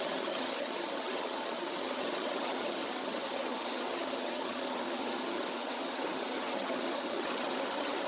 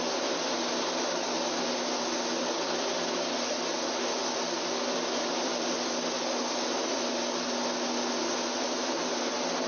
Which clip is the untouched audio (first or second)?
second